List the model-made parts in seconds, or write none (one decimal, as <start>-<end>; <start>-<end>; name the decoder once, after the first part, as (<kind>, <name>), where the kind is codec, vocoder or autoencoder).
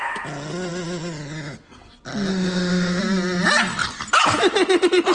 2.3-3.0 (autoencoder, DAC-VAE)